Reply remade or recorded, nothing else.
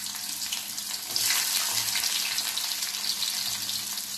recorded